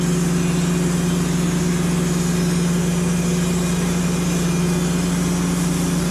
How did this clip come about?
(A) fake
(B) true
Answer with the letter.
B